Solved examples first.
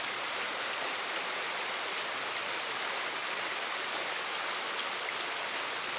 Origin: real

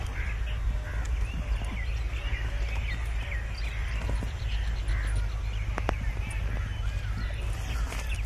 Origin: real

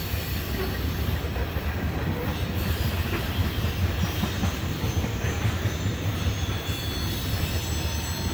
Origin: real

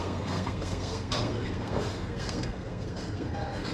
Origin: fake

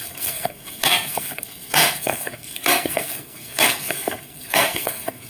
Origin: fake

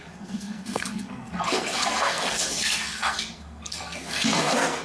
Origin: fake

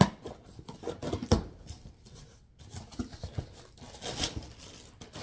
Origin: real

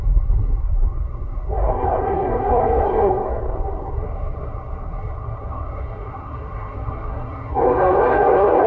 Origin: fake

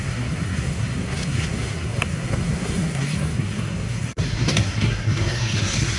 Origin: fake